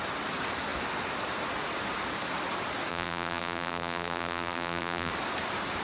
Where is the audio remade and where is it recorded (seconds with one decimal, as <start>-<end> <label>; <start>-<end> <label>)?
0.0-2.9 recorded; 2.9-5.1 remade; 5.1-5.8 recorded